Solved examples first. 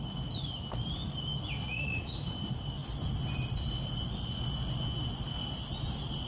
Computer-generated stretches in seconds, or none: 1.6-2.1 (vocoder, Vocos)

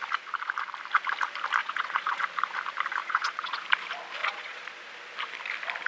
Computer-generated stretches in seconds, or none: 1.6-2.2 (vocoder, Vocos); 3.0-3.6; 4.2-4.8

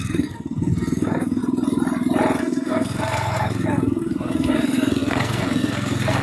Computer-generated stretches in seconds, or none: 0.0-1.4 (codec, SNAC); 2.4-6.2

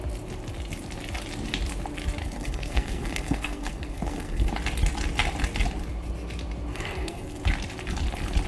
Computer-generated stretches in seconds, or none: 2.2-4.5 (codec, SNAC); 6.7-7.4

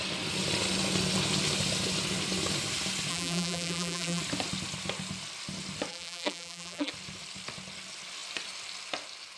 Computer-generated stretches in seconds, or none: 3.1-4.2 (vocoder, BigVGAN v2); 5.9-6.9

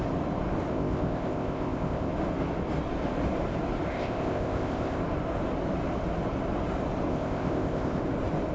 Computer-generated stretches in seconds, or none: 0.7-2.1 (codec, ZipCodec); 3.9-5.0; 7.1-8.0

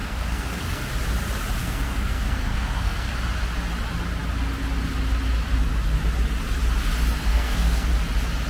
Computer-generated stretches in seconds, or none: 0.0-0.9 (codec, SNAC); 1.6-3.1; 7.3-7.9

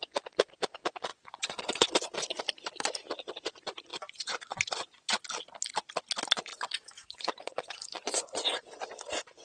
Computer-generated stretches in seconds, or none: 1.1-1.6 (vocoder, Vocos); 3.9-5.1; 6.5-8.6